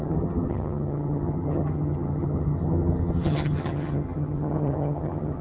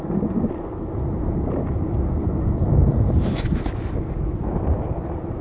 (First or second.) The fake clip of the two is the first